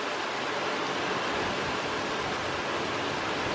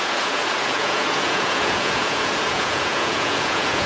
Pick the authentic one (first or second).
first